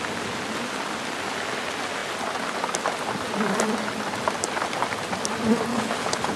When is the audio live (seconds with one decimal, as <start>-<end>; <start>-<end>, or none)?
0.0-5.7